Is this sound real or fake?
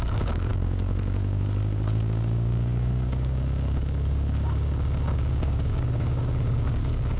fake